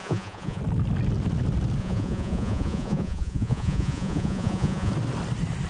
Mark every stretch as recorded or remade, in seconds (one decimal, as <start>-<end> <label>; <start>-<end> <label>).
0.0-0.6 remade; 0.6-1.8 recorded; 1.8-4.9 remade; 4.9-5.7 recorded